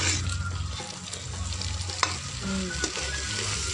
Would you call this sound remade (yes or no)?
no